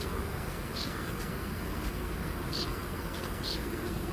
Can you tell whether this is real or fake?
fake